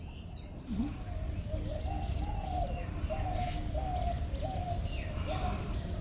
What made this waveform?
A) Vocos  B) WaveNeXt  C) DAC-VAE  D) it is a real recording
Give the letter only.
D